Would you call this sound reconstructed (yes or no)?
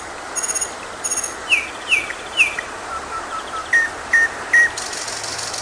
no